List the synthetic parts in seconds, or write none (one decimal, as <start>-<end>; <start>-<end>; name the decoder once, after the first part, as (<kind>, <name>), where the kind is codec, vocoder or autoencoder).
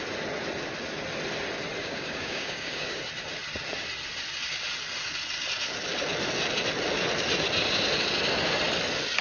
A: 1.8-3.0 (codec, DAC)